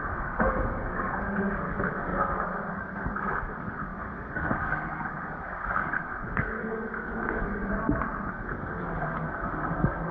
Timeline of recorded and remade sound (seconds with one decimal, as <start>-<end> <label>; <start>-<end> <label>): 0.0-7.7 remade; 7.7-8.3 recorded; 8.3-10.1 remade